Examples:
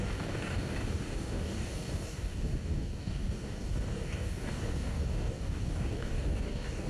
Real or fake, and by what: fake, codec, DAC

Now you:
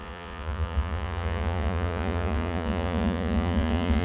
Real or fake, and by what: fake, vocoder, Vocos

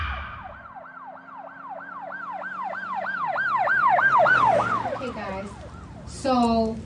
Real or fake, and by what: real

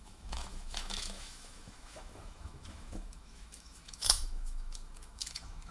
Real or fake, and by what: fake, autoencoder, DAC-VAE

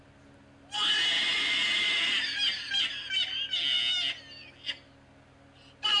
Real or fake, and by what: real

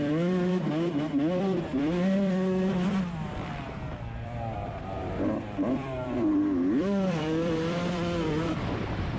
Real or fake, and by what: fake, vocoder, BigVGAN v2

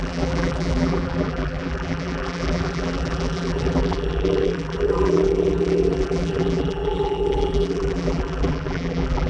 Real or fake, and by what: fake, vocoder, BigVGAN v2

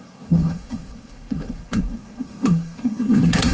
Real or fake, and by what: fake, codec, SNAC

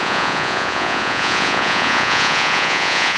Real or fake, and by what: fake, vocoder, Vocos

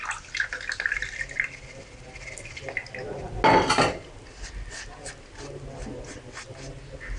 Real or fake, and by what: real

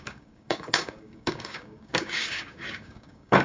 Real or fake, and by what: fake, codec, DAC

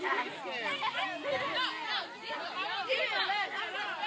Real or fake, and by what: real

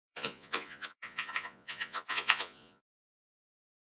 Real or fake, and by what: fake, vocoder, Vocos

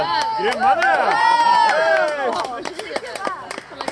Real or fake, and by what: real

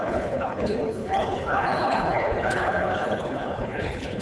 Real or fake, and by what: fake, codec, HILCodec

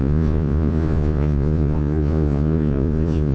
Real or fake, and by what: fake, vocoder, Vocos